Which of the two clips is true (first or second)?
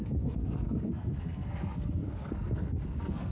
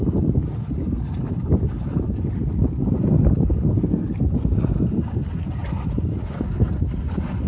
second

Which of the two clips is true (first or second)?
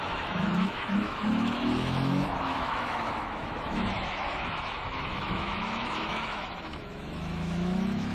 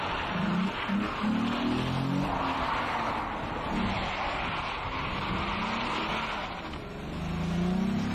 second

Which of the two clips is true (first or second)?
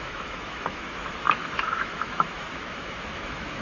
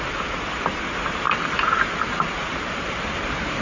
second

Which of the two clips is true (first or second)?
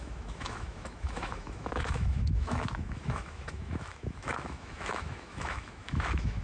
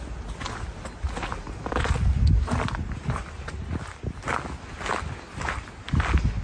second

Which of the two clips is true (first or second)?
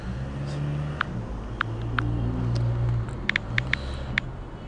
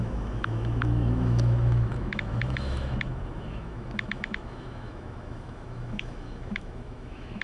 first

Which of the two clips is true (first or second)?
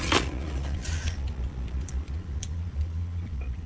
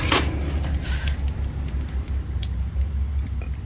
second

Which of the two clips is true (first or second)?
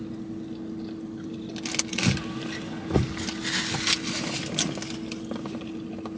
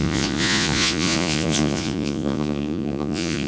first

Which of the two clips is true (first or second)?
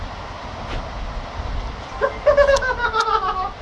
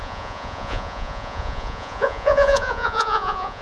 first